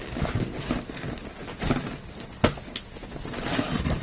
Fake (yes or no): no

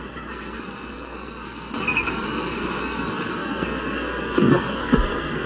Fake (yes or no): yes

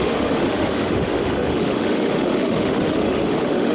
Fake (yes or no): yes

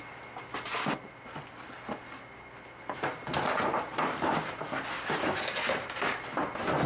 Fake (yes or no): no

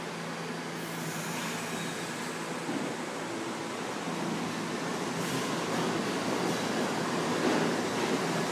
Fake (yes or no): no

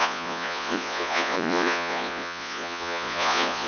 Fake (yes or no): yes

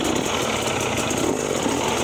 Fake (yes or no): no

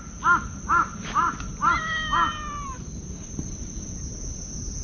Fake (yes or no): no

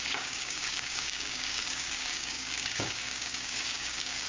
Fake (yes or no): yes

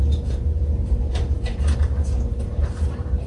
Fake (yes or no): yes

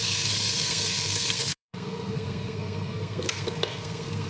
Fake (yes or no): yes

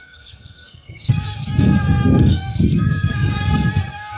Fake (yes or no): yes